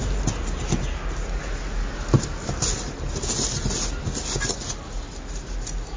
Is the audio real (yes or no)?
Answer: yes